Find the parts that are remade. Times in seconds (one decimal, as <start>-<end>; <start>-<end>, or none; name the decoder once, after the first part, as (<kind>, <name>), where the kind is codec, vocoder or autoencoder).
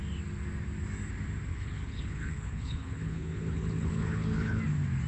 1.5-4.6 (codec, HILCodec)